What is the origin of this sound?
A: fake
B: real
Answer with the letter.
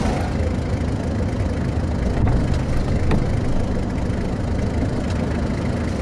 B